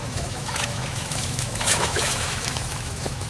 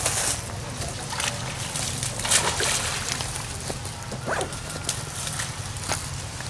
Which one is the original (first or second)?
second